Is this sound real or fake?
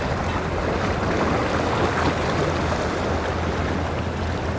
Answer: real